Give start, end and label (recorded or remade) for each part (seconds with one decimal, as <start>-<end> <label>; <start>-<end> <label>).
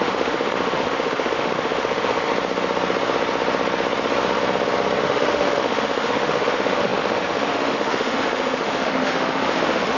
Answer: 0.0-2.3 remade; 2.3-5.0 recorded; 5.0-10.0 remade